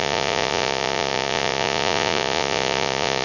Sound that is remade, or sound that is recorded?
remade